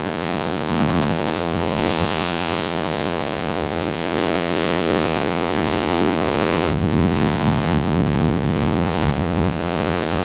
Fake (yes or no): yes